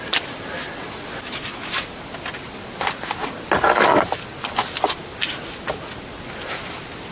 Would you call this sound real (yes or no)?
yes